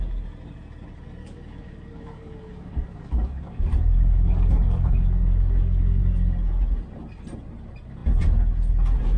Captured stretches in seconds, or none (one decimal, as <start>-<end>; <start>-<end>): 0.0-1.2; 6.0-9.2